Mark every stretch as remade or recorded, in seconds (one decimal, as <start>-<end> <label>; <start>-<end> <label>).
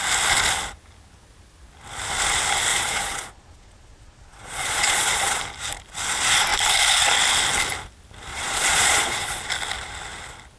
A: 0.0-2.7 recorded; 2.7-5.4 remade; 5.4-8.3 recorded; 8.3-9.4 remade; 9.4-10.6 recorded